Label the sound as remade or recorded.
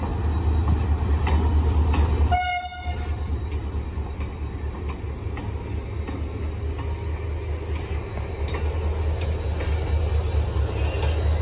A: recorded